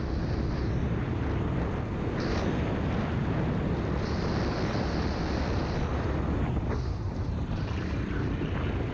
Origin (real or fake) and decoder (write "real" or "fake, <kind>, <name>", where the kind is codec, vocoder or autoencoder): real